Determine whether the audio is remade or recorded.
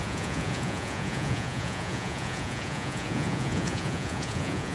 remade